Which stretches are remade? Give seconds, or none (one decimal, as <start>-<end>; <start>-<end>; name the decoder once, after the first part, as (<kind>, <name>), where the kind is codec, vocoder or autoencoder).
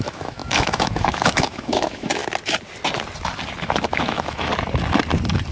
0.0-2.2 (autoencoder, DAC-VAE); 3.6-4.5